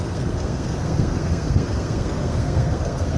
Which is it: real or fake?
fake